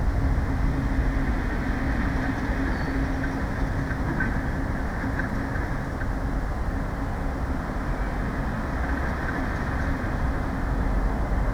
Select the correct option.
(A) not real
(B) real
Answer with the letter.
B